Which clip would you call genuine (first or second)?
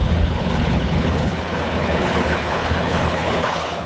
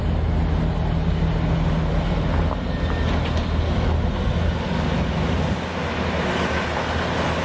second